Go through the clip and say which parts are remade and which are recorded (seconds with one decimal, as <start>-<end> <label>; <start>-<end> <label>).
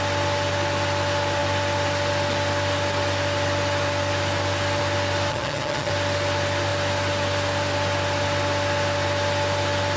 0.0-5.3 recorded; 5.3-5.9 remade; 5.9-10.0 recorded